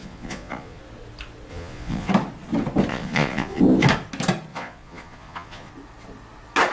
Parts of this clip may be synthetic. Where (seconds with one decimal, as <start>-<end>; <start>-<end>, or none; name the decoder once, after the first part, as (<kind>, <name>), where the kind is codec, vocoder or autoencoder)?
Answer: 0.0-0.8 (vocoder, Vocos); 1.5-2.1; 2.9-3.6; 4.5-5.7

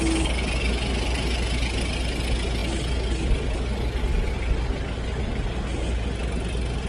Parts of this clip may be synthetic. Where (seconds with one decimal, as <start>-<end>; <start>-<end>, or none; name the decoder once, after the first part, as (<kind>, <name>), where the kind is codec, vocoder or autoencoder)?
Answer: none

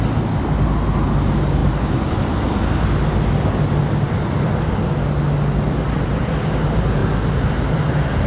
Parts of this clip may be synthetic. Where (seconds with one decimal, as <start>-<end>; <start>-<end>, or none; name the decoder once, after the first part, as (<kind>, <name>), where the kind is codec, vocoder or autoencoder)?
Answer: none

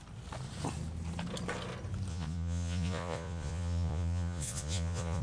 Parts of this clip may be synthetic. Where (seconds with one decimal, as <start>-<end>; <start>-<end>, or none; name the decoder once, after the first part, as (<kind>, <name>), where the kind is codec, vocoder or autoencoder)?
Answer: 2.1-5.2 (vocoder, Vocos)

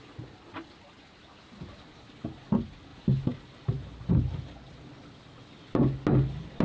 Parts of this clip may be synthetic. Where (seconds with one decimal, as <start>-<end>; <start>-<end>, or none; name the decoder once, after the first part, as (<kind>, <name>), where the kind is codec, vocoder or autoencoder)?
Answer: none

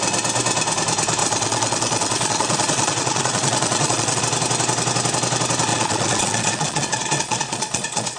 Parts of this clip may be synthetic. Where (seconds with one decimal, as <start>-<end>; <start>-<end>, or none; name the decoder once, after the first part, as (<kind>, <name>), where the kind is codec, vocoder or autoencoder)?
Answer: 1.2-4.2 (vocoder, Vocos); 5.7-8.2